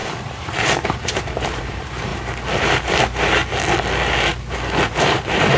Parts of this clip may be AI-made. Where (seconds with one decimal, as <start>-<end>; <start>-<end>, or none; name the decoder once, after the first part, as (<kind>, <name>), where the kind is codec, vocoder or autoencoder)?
0.0-2.1 (vocoder, BigVGAN v2); 2.6-3.4; 4.9-5.6